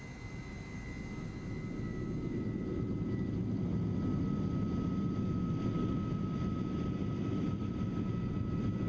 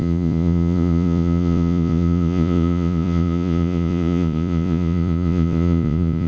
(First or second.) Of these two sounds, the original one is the first